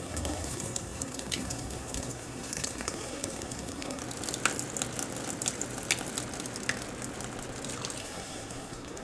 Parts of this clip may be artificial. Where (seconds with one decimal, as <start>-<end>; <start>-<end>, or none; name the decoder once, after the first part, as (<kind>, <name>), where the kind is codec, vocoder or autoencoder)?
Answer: 0.0-4.0 (codec, SNAC); 8.0-9.0